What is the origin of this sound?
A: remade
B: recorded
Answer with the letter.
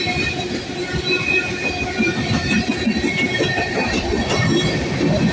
B